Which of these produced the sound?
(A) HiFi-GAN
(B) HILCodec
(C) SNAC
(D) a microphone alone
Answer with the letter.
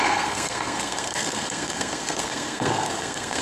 C